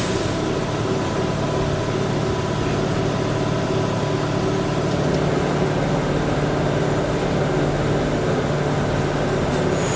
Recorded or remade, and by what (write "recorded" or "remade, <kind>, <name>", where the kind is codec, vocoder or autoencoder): recorded